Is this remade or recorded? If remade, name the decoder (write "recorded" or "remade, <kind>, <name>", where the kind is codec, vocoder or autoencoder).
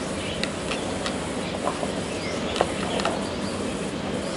recorded